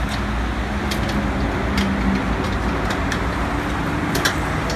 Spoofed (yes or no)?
no